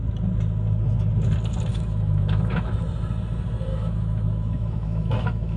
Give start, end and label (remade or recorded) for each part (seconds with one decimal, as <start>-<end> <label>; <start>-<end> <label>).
0.0-1.7 recorded; 1.7-2.7 remade; 2.7-3.7 recorded; 3.7-5.6 remade